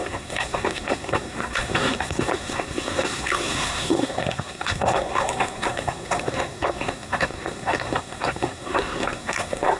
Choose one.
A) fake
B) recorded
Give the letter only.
A